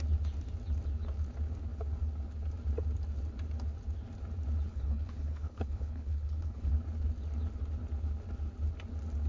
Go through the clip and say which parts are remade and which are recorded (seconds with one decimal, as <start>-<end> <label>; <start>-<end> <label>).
0.0-4.7 recorded; 4.7-6.7 remade; 6.7-9.3 recorded